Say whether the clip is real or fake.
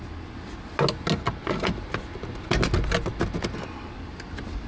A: real